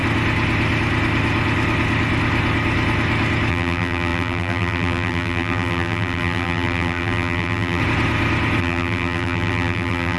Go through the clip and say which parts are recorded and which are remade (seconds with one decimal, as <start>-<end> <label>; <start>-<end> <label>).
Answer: 0.0-3.5 recorded; 3.5-7.8 remade; 7.8-8.6 recorded; 8.6-10.2 remade